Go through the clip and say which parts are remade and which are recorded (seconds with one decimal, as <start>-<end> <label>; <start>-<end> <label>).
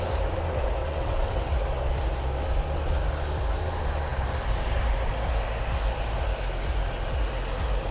0.0-0.8 recorded; 0.8-1.5 remade; 1.5-7.9 recorded